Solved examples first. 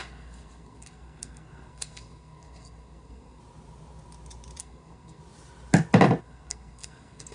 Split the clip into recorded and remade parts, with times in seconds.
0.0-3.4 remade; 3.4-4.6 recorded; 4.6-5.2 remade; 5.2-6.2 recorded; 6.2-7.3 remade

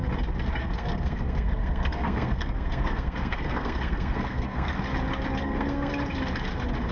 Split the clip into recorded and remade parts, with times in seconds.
0.0-0.6 recorded; 0.6-4.7 remade; 4.7-5.4 recorded; 5.4-5.9 remade; 5.9-6.9 recorded